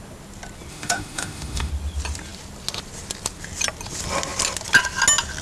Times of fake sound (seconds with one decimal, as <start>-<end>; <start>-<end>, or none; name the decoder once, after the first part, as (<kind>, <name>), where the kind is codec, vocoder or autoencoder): 0.7-1.7 (autoencoder, DAC-VAE)